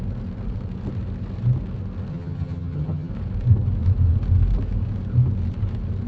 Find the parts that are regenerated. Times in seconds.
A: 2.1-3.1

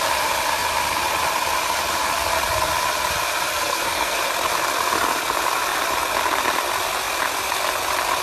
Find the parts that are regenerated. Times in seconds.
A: 3.5-4.2

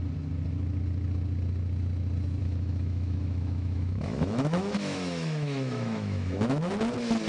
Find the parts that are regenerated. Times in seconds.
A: 2.4-6.7

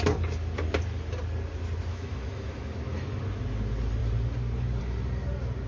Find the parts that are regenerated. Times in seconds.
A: 1.9-3.2

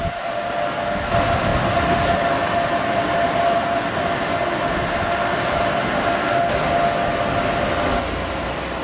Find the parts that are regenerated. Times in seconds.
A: none

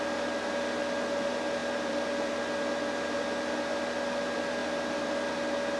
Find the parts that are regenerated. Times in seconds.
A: 1.6-2.3

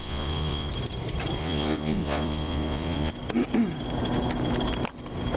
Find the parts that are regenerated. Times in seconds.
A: 0.0-0.7; 1.4-3.1

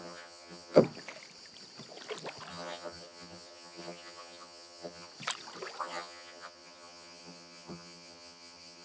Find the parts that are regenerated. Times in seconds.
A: 0.0-0.8; 2.5-5.1; 5.8-8.8